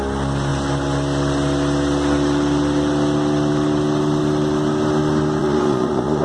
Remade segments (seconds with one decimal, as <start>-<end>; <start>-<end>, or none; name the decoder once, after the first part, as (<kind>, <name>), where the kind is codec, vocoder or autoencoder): 5.4-6.2 (vocoder, Vocos)